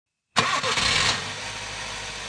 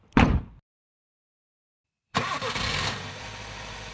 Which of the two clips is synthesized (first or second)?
second